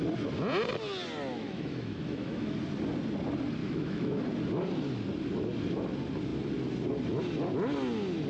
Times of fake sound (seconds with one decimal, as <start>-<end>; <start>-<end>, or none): 1.3-2.6; 3.6-4.2